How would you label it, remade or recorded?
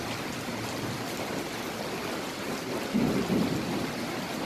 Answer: recorded